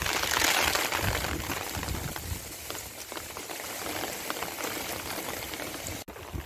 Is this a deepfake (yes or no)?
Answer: no